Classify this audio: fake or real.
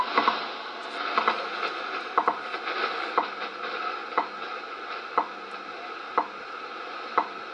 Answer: real